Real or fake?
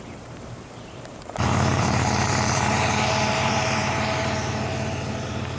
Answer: fake